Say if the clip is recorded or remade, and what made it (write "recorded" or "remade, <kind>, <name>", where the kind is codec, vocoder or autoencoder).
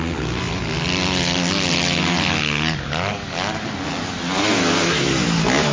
recorded